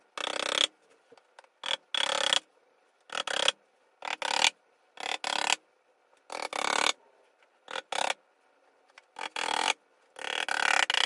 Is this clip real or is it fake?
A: real